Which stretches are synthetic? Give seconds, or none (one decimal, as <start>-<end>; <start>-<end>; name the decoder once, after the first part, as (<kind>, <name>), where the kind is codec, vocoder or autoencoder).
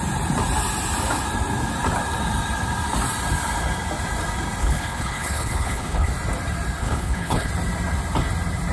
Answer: 4.6-6.1 (codec, HILCodec); 6.8-7.5